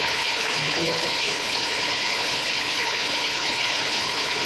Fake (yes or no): yes